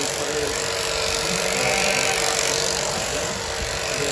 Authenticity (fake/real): fake